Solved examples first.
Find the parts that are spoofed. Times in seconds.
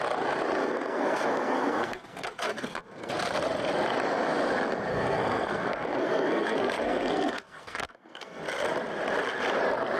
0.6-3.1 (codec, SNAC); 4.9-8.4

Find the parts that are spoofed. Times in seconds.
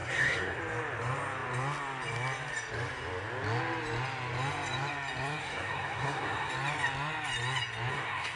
0.0-0.6 (codec, SNAC); 5.4-6.5; 7.9-8.4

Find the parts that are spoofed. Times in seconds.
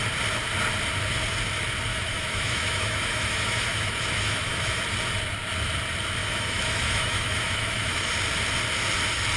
1.9-4.8 (autoencoder, DAC-VAE); 6.2-8.1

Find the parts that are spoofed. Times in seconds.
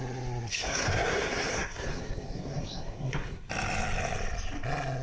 0.5-3.5 (codec, SNAC)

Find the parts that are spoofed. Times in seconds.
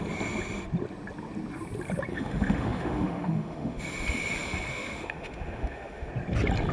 2.1-3.8 (autoencoder, DAC-VAE); 4.7-6.1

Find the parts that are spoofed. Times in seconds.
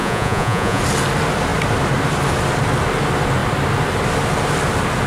0.0-0.8 (vocoder, Vocos)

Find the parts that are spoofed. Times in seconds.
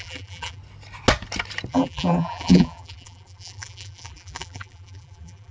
0.0-0.6 (vocoder, BigVGAN v2); 1.7-5.5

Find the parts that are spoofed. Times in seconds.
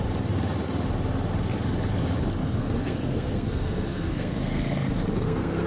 2.4-5.7 (codec, SNAC)